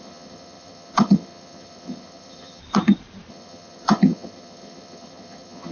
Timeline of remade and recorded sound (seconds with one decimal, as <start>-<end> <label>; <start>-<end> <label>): 0.0-2.6 remade; 2.6-3.3 recorded; 3.3-5.7 remade